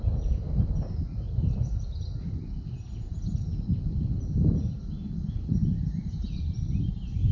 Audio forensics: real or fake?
real